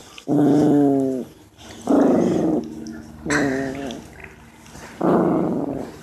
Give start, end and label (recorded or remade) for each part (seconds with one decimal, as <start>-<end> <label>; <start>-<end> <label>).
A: 0.0-6.0 recorded